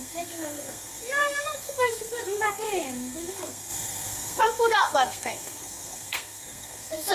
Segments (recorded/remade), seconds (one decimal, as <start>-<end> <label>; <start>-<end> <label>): 0.0-7.1 remade